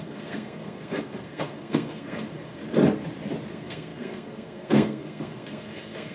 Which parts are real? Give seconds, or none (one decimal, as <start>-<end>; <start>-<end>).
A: 2.6-3.5